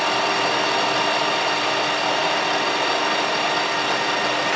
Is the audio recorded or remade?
recorded